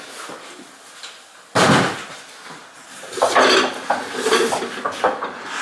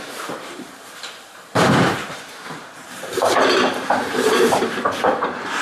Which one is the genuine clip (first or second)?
first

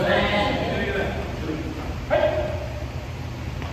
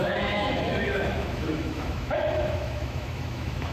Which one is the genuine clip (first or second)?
first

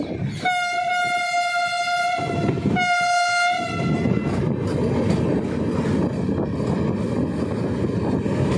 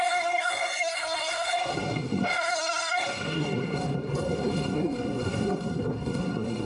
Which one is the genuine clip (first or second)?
first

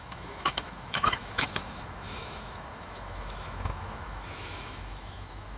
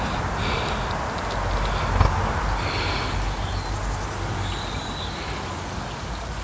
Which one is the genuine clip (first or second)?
second